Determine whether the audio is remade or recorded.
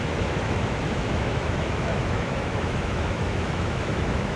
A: remade